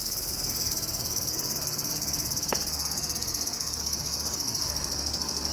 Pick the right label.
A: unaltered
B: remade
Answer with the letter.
B